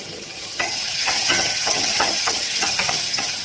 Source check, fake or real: fake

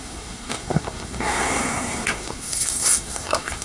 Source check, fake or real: fake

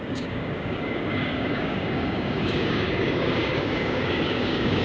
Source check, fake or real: fake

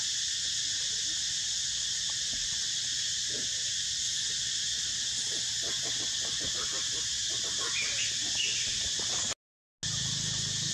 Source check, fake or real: real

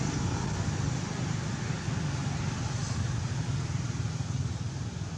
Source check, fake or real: real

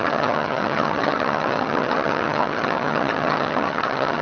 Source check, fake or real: fake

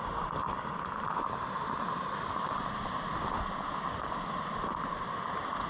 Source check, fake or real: real